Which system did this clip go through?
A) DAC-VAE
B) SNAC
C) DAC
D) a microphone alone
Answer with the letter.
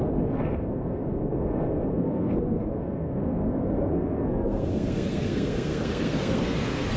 B